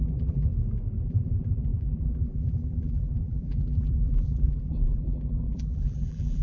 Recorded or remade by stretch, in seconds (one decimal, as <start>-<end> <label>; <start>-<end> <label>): 0.0-0.5 remade; 0.5-1.0 recorded; 1.0-6.4 remade